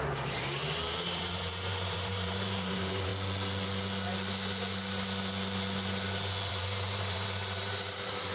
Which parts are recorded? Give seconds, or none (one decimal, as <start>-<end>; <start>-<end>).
3.1-6.5